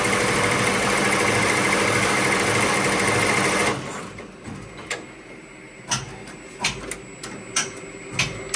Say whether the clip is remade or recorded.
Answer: recorded